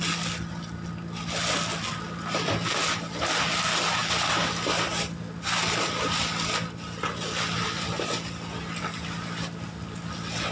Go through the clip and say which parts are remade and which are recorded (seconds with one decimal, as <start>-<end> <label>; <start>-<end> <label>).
0.0-10.5 recorded